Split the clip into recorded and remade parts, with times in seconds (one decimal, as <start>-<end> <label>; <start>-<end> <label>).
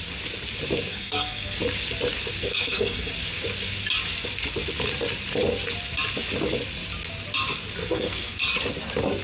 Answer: 0.0-0.9 recorded; 0.9-1.6 remade; 1.6-2.4 recorded; 2.4-3.1 remade; 3.1-7.8 recorded; 7.8-8.4 remade; 8.4-9.2 recorded